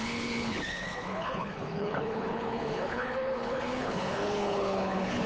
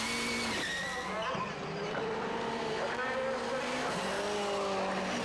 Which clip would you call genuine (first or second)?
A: second